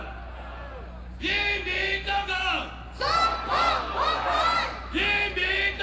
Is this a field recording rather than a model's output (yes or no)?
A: yes